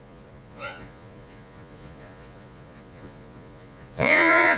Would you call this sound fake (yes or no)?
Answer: yes